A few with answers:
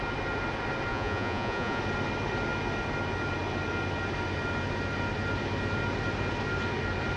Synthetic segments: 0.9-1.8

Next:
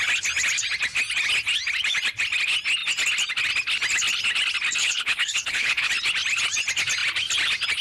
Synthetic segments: 4.8-5.9

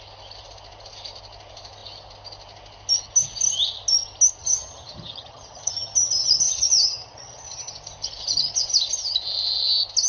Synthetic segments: 4.4-7.7